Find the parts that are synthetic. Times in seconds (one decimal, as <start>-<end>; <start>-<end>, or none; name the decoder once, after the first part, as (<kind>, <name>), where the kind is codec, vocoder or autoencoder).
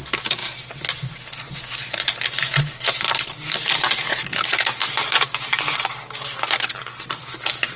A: none